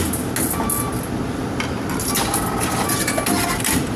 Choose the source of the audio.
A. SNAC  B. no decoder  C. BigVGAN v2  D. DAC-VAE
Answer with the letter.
B